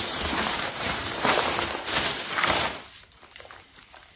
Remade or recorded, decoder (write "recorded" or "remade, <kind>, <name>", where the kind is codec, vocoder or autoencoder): remade, vocoder, BigVGAN v2